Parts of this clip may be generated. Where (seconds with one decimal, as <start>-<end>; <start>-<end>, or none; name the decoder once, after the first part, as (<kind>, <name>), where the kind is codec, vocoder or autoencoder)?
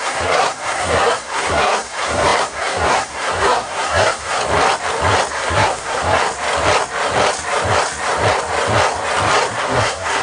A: 0.0-4.4 (codec, SNAC); 5.3-6.2; 9.6-10.2